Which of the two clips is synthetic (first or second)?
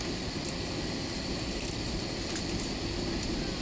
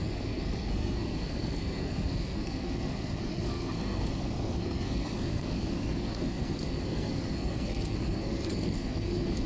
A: second